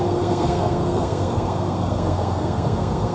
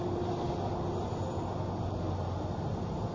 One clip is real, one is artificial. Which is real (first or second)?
second